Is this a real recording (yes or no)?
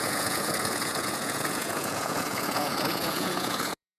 no